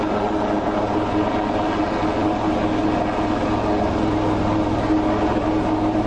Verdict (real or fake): real